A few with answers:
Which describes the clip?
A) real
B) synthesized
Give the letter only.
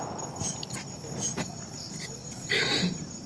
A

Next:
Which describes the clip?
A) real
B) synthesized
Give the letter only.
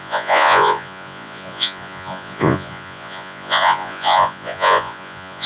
B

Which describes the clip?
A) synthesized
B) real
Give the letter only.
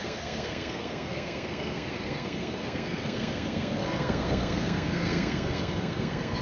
A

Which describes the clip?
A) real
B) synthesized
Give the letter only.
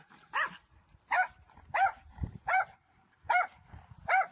B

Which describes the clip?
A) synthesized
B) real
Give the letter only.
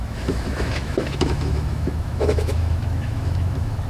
A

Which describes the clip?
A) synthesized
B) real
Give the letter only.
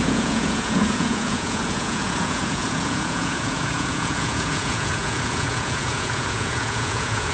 A